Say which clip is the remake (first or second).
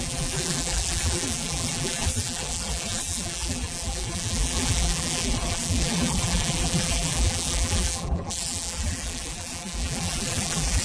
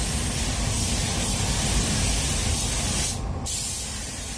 first